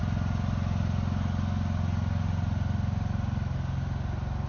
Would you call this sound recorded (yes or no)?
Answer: yes